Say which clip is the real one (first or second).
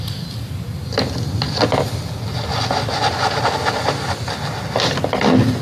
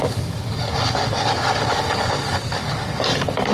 first